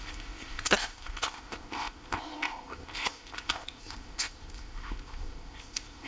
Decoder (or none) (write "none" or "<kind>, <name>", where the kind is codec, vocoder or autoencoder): codec, ZipCodec